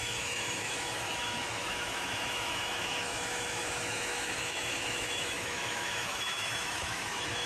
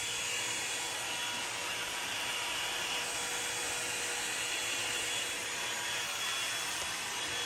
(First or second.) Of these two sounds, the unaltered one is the second